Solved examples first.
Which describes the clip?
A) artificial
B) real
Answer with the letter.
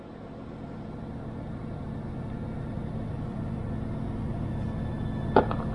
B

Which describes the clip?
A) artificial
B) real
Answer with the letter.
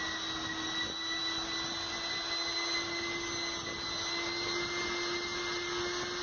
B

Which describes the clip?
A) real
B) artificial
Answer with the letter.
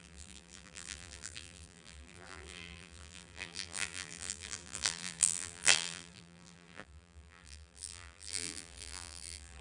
B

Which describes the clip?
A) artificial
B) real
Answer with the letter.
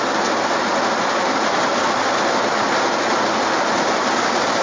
B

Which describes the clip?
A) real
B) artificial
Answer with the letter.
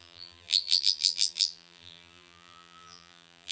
B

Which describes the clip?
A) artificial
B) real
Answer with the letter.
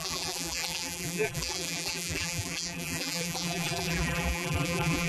A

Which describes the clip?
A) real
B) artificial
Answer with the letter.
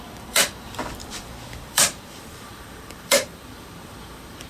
B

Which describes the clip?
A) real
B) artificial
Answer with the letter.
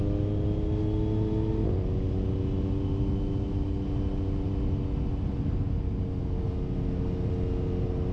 A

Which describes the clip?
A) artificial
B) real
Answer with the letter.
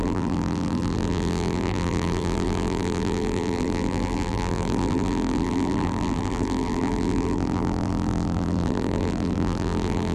A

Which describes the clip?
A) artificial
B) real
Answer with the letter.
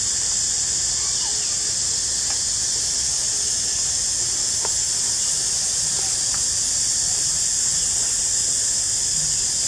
B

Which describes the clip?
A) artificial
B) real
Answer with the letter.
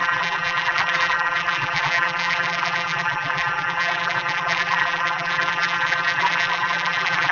A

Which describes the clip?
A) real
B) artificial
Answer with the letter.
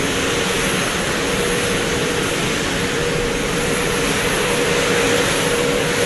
B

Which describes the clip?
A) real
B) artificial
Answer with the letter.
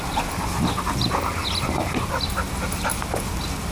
A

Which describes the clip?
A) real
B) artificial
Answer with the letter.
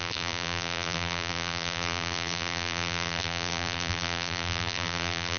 B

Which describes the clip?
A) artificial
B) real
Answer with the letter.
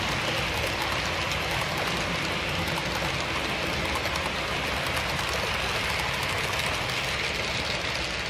B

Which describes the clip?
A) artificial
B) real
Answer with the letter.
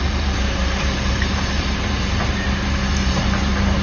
A